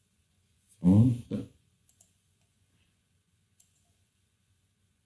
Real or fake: fake